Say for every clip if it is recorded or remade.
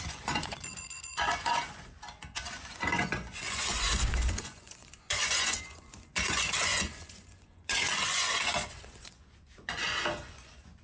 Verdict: remade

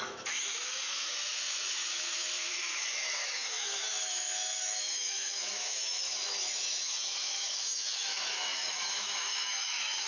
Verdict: remade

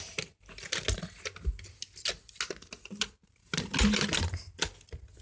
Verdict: recorded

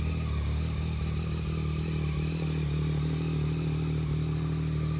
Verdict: recorded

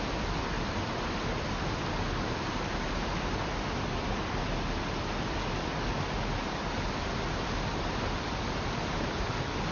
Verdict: recorded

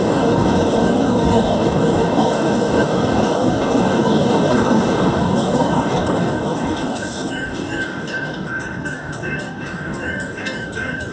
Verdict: remade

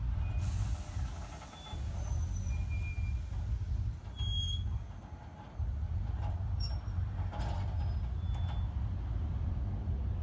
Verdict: recorded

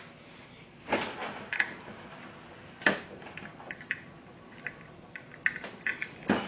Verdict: recorded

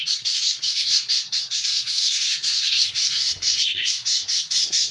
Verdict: remade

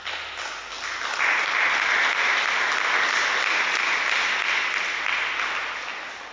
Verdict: recorded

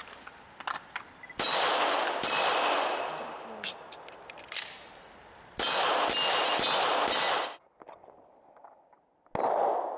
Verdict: recorded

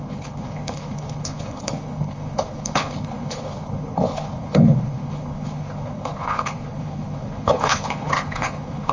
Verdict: remade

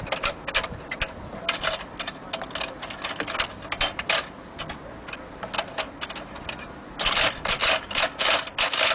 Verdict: recorded